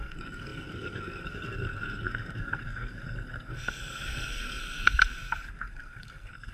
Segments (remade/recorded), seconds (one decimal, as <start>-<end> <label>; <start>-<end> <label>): 0.0-6.5 remade